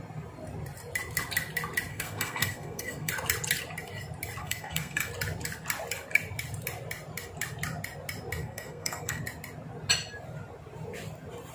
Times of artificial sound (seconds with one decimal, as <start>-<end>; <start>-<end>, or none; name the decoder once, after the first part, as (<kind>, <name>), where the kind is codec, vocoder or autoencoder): 1.9-3.1 (codec, SNAC); 4.4-5.1; 8.4-9.2